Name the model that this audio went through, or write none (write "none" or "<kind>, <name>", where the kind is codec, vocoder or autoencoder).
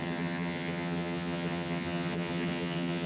vocoder, HiFi-GAN